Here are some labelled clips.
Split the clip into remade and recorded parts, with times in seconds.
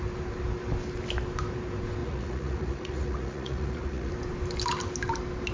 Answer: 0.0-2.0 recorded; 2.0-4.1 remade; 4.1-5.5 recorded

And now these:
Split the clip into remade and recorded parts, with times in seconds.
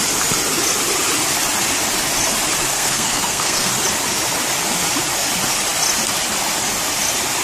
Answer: 0.0-2.7 recorded; 2.7-3.7 remade; 3.7-7.4 recorded